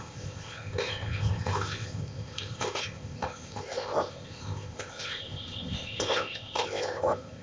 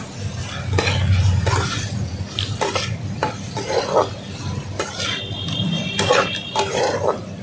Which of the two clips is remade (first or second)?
first